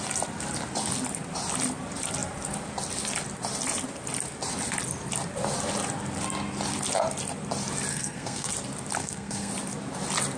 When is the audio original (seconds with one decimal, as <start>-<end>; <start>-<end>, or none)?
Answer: 0.0-7.9; 8.5-9.0; 9.5-10.4